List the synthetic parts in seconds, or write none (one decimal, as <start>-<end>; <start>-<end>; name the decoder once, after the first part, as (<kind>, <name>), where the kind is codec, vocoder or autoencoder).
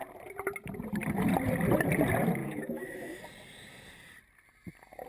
2.4-3.2 (autoencoder, DAC-VAE)